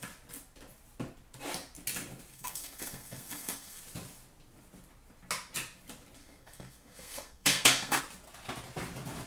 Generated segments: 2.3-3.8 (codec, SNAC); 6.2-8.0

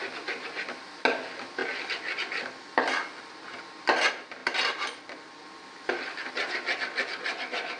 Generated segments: none